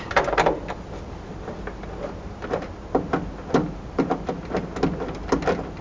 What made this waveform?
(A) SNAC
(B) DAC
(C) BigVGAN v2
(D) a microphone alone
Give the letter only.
D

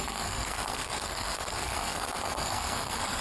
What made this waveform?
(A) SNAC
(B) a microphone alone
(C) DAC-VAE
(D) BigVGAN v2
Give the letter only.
A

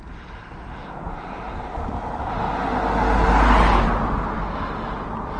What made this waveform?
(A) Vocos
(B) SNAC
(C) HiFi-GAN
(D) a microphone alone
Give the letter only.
D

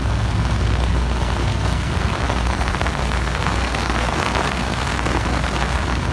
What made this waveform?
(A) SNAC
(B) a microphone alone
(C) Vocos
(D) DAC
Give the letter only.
A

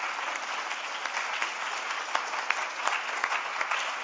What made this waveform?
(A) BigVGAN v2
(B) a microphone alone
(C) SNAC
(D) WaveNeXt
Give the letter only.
B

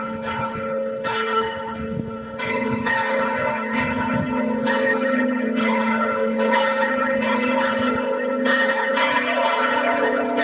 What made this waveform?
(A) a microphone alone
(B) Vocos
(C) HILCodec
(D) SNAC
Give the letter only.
C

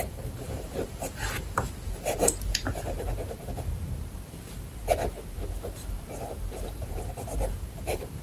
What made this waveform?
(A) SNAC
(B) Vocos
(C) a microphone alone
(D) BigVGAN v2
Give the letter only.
D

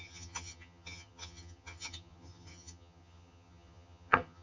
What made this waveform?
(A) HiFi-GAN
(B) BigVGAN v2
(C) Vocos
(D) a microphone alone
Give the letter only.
A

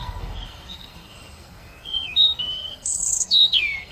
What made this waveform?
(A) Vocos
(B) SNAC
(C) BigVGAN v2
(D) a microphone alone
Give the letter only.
B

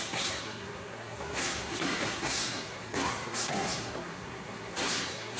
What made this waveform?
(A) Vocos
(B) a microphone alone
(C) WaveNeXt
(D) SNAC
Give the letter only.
D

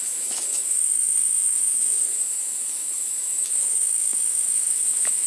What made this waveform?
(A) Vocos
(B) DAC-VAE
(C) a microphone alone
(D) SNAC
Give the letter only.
B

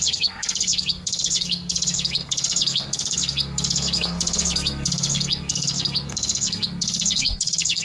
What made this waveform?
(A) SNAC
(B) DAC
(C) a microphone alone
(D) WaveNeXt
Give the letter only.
A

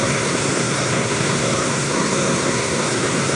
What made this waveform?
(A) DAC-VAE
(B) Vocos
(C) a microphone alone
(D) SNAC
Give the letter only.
D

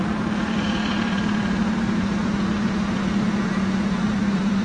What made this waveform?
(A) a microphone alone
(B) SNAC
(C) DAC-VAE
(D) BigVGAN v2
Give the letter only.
D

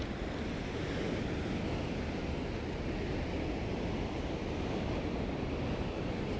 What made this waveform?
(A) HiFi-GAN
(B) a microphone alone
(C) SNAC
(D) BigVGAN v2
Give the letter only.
B